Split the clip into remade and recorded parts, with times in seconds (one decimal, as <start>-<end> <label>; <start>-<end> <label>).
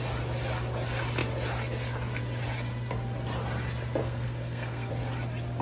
0.0-4.0 recorded; 4.0-4.9 remade; 4.9-5.6 recorded